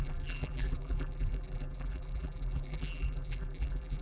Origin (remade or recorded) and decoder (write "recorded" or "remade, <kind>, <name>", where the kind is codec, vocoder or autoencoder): remade, vocoder, BigVGAN v2